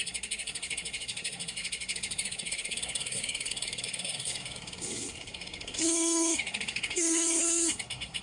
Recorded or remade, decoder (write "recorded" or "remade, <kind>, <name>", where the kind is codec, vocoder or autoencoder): remade, codec, SNAC